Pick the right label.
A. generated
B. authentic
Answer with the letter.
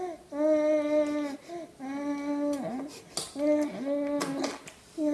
B